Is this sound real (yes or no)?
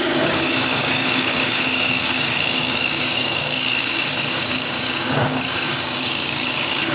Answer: no